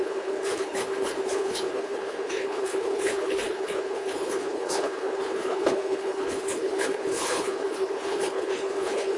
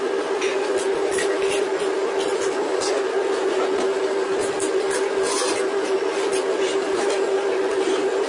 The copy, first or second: first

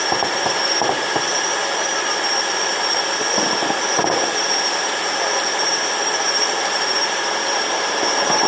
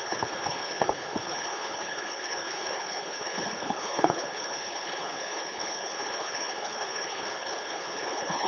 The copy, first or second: second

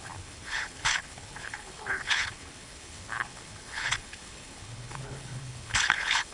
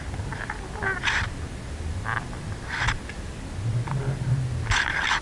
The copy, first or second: first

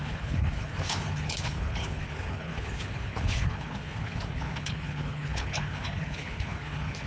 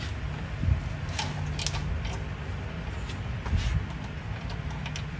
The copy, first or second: first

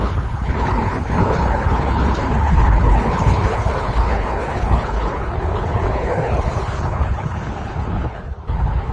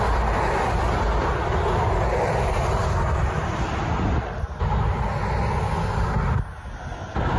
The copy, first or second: first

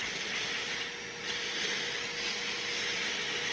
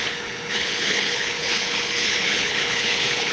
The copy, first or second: second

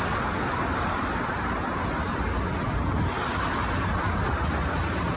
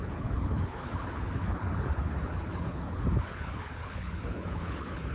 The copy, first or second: second